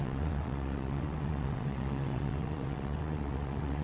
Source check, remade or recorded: remade